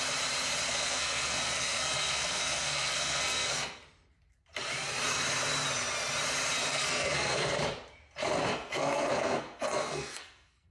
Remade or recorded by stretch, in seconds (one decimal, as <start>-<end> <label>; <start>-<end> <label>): 0.0-0.7 recorded; 0.7-3.8 remade; 3.8-6.7 recorded; 6.7-7.6 remade; 7.6-8.5 recorded; 8.5-10.7 remade